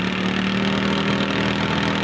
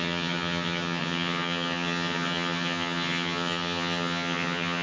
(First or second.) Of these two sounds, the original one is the first